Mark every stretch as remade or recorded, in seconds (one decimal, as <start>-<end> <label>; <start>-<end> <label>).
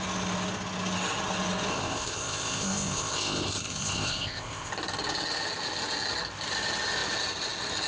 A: 0.0-1.7 recorded; 1.7-4.7 remade; 4.7-7.9 recorded